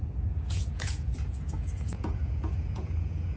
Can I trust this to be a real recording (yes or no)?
no